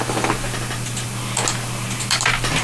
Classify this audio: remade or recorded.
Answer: recorded